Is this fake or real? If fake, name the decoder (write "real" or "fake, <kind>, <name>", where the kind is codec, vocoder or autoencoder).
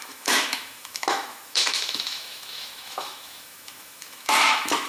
fake, autoencoder, DAC-VAE